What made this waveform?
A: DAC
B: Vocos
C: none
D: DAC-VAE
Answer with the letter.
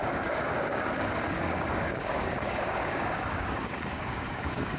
A